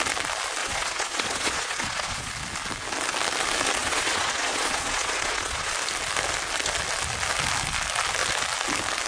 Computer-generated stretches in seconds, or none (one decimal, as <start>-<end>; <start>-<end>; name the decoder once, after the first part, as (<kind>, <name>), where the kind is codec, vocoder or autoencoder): 0.6-2.3 (vocoder, Vocos); 3.8-5.7